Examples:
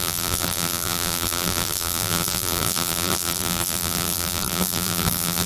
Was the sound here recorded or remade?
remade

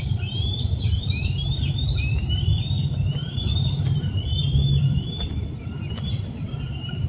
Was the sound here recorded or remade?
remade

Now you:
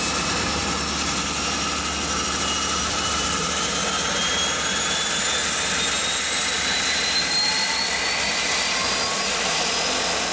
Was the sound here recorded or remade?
recorded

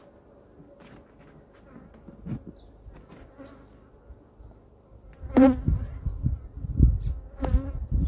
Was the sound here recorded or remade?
recorded